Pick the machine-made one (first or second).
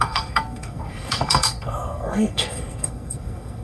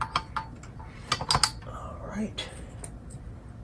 first